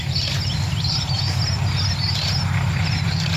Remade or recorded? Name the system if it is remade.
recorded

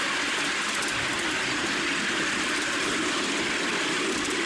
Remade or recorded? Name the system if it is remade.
recorded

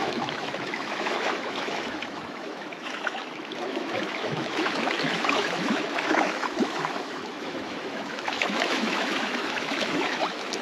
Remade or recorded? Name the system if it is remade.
remade, autoencoder, DAC-VAE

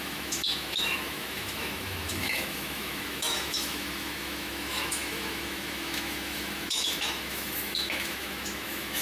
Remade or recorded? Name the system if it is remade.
remade, autoencoder, DAC-VAE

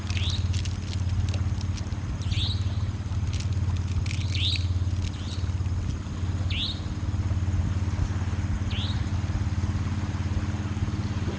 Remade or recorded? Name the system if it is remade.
recorded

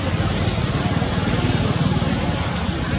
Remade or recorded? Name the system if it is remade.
recorded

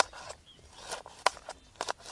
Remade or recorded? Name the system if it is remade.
recorded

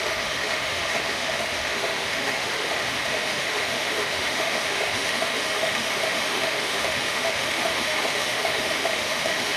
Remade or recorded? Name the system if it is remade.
remade, autoencoder, DAC-VAE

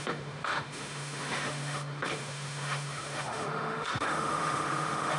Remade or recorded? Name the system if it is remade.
remade, autoencoder, DAC-VAE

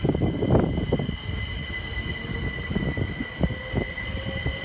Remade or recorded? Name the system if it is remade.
recorded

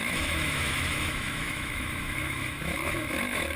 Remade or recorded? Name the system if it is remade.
remade, autoencoder, DAC-VAE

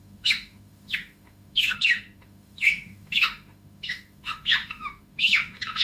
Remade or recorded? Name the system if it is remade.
remade, autoencoder, DAC-VAE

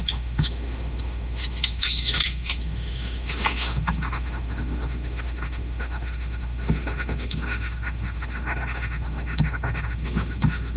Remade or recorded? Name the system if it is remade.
remade, autoencoder, DAC-VAE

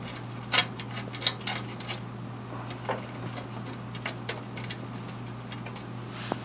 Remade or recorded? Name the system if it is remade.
recorded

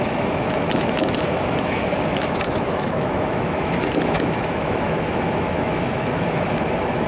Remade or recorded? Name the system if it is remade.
remade, autoencoder, DAC-VAE